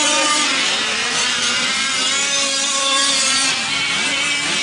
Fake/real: fake